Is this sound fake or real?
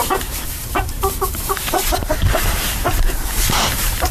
fake